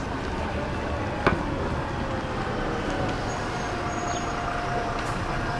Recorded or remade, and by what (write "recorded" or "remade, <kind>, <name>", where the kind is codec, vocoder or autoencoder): recorded